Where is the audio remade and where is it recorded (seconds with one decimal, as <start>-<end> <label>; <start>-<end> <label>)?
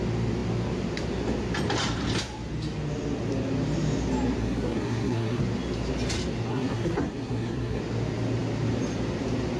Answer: 0.0-4.4 recorded; 4.4-5.4 remade; 5.4-6.5 recorded; 6.5-7.8 remade; 7.8-9.6 recorded